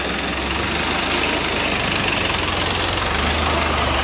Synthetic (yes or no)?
no